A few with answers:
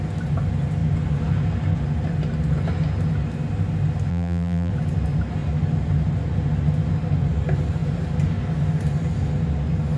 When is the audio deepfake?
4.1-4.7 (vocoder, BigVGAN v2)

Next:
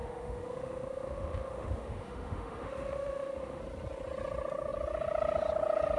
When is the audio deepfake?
0.0-3.6 (autoencoder, DAC-VAE)